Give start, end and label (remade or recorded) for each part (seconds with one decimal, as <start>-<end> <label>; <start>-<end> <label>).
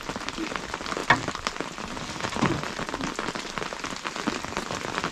0.0-5.1 recorded